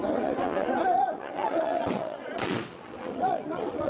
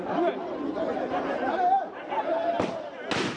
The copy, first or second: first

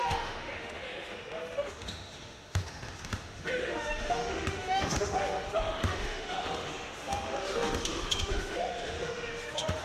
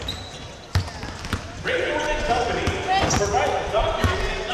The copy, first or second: first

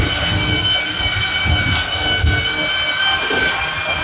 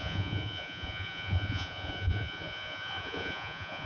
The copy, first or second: second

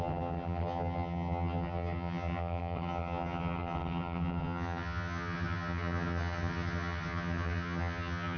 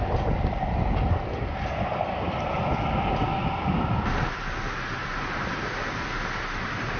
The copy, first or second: first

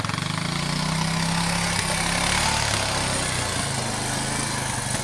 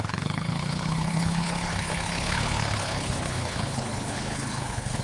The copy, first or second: second